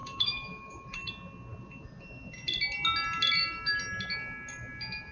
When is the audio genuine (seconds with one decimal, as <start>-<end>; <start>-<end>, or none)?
1.1-5.1

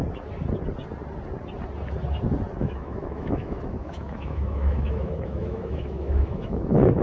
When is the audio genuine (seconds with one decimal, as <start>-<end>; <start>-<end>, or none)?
0.0-2.6

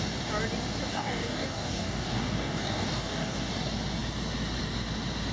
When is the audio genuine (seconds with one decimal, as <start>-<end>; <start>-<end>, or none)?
0.0-0.9; 3.5-5.3